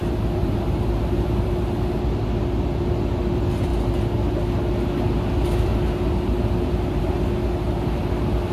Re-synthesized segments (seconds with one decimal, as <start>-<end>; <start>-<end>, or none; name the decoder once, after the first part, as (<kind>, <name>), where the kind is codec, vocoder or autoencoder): 0.4-1.5 (vocoder, BigVGAN v2)